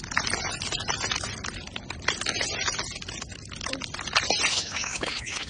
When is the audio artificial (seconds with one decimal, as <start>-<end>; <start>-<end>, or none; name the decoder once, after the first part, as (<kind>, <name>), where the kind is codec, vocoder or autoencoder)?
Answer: 4.5-5.5 (autoencoder, DAC-VAE)